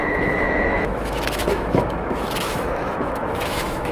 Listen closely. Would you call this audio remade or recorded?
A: remade